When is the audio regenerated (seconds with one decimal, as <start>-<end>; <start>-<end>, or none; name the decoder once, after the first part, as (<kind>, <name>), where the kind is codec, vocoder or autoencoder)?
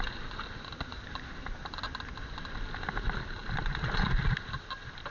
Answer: 0.9-1.8 (vocoder, BigVGAN v2)